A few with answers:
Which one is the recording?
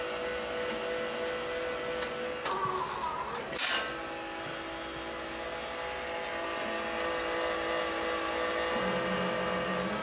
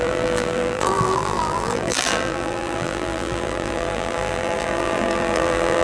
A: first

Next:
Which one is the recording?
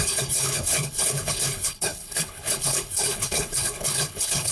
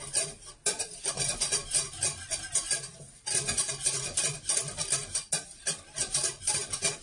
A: second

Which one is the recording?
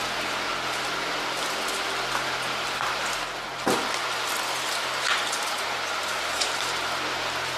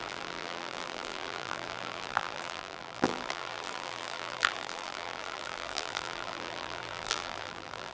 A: first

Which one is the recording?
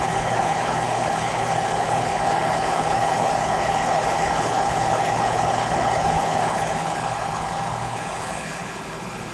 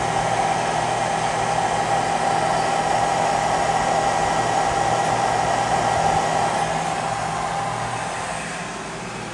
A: second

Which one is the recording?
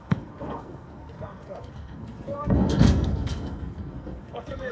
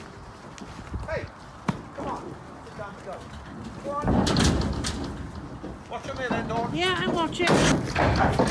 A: second